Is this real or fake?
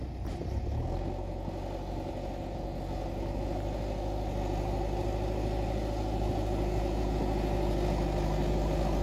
real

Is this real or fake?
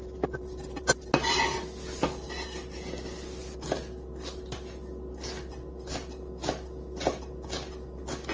real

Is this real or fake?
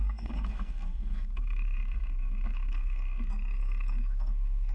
fake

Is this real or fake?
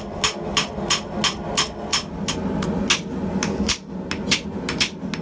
real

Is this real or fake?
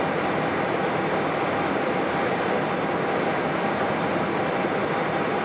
real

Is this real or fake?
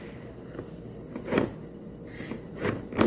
real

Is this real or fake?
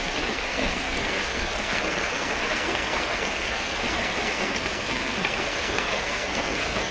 fake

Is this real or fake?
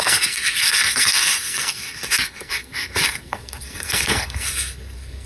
fake